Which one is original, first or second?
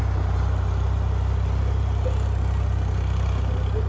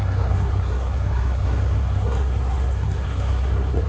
first